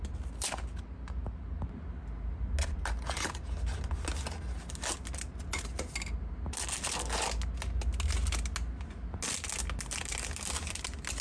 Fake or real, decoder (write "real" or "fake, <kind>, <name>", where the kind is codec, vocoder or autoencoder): real